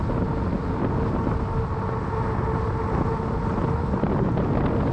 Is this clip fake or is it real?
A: real